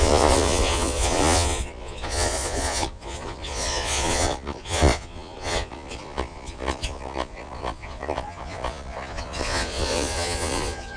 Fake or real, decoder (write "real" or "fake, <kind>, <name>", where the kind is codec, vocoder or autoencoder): fake, vocoder, Vocos